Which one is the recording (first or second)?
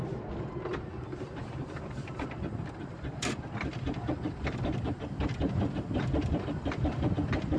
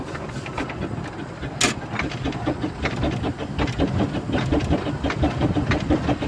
second